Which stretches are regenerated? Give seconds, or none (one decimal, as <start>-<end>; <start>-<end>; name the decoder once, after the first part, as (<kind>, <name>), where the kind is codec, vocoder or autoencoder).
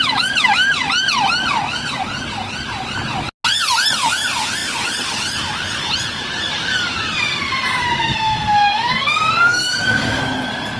7.3-10.2 (codec, SNAC)